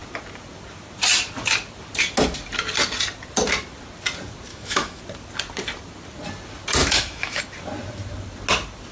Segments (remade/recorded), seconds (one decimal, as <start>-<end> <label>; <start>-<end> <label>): 0.0-4.5 recorded; 4.5-5.0 remade; 5.0-6.8 recorded; 6.8-7.4 remade; 7.4-8.9 recorded